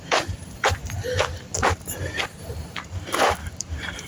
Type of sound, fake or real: fake